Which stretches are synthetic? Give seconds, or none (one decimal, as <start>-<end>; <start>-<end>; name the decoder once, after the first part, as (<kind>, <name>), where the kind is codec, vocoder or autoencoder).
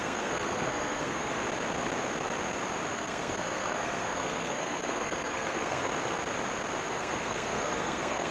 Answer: 0.0-1.4 (codec, SNAC); 2.9-5.9; 6.9-8.3